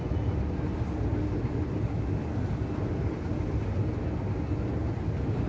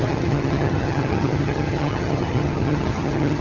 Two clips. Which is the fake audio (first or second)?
second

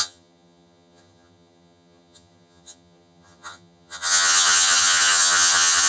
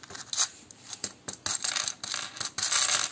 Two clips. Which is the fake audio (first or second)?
first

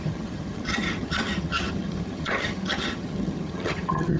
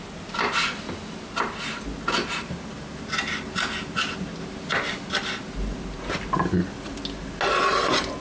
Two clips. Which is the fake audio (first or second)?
first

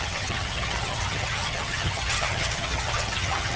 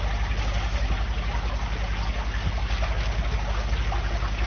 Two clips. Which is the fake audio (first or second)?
first